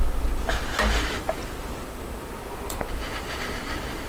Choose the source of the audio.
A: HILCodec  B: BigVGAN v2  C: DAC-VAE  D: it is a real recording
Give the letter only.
D